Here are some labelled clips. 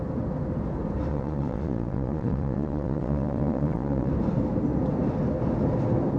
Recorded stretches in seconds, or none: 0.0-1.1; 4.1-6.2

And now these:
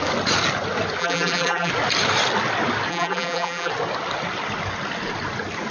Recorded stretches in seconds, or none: 0.0-1.0; 1.7-2.9; 3.7-5.7

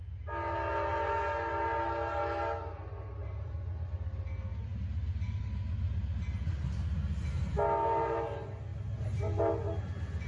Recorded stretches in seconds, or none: 0.0-3.2; 3.9-8.7; 9.5-10.3

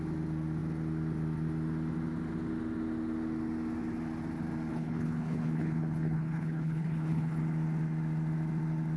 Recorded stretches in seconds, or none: 0.0-4.7; 7.4-9.0

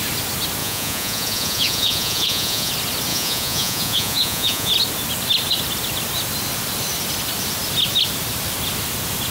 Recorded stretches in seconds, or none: 0.0-0.6; 2.7-3.1; 4.7-9.3